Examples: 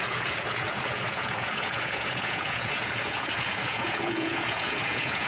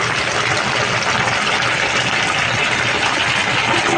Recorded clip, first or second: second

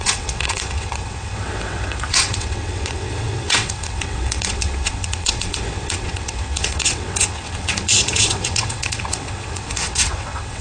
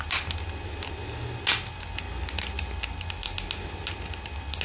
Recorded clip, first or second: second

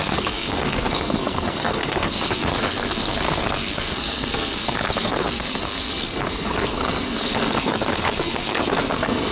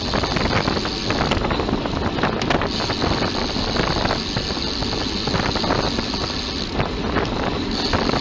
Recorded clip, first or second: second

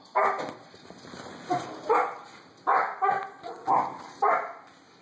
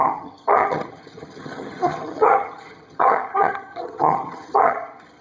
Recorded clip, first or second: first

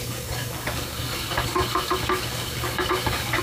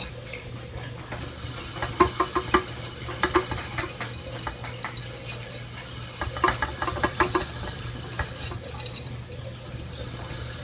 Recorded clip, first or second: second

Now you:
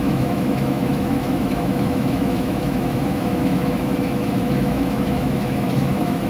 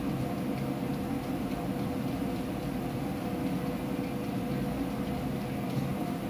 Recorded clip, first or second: second